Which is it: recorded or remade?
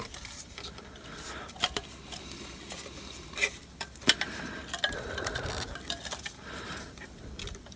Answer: remade